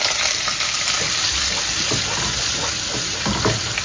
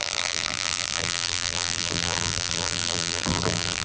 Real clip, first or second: first